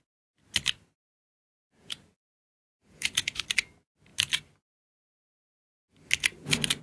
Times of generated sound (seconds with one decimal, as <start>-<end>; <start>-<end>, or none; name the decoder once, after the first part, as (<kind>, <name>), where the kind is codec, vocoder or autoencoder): 1.4-3.4 (vocoder, Vocos)